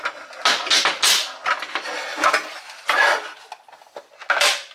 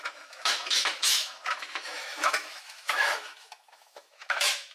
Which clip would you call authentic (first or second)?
first